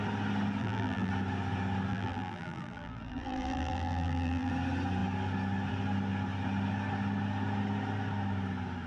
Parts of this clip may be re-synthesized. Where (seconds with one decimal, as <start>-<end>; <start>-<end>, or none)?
0.6-1.1; 1.9-4.5